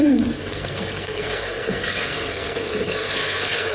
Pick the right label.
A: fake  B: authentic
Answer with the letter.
A